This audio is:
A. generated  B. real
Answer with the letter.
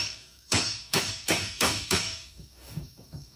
A